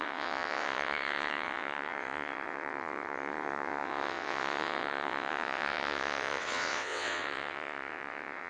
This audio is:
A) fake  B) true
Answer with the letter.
A